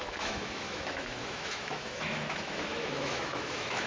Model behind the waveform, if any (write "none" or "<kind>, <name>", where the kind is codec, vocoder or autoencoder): autoencoder, DAC-VAE